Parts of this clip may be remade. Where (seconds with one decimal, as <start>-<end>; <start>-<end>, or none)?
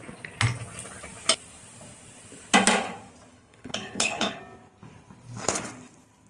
3.3-4.4